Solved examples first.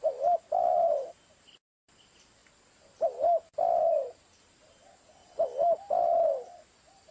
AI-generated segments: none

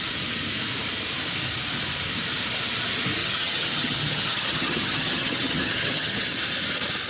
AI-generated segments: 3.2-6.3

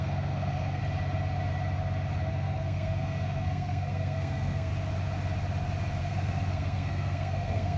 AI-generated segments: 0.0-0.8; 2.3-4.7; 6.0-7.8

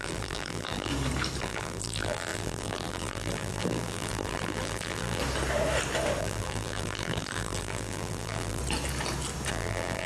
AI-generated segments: 0.0-0.9; 1.4-5.2; 6.2-8.6; 9.5-10.1